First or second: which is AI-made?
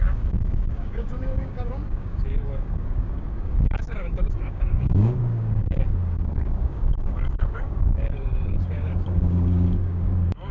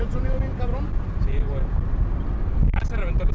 first